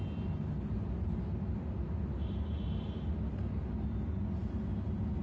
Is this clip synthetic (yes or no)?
no